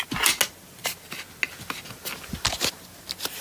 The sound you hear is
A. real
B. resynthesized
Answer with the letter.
A